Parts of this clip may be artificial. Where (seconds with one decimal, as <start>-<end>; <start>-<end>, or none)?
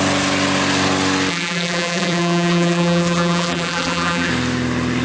1.3-4.3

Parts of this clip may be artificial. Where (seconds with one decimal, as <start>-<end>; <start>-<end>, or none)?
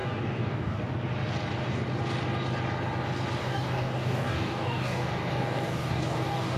0.0-0.8; 3.4-6.6